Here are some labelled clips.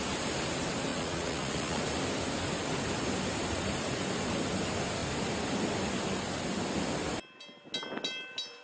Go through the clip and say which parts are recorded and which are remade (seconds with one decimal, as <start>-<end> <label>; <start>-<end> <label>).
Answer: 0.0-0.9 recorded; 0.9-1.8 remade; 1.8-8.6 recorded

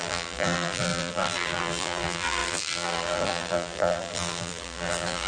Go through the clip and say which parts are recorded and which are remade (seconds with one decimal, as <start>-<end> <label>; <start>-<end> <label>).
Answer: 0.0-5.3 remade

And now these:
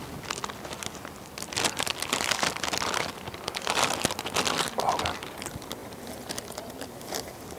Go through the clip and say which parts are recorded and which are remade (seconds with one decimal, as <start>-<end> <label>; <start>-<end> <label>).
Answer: 0.0-7.6 recorded

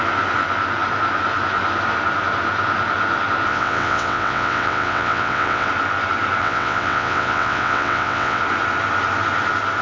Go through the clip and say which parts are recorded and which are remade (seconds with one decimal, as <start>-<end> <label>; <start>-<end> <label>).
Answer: 0.0-3.5 recorded; 3.5-5.7 remade; 5.7-6.4 recorded; 6.4-8.4 remade; 8.4-9.8 recorded

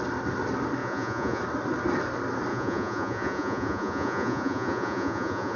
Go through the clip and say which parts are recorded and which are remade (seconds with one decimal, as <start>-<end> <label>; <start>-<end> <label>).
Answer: 0.0-0.8 recorded; 0.8-1.4 remade; 1.4-2.5 recorded; 2.5-5.6 remade